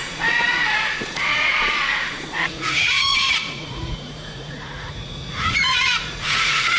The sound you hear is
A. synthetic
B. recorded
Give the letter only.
A